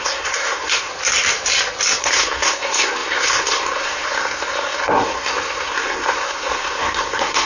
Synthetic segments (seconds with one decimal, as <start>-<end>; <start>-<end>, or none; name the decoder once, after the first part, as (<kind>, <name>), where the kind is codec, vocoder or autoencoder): 0.0-0.9 (codec, SNAC); 2.0-7.5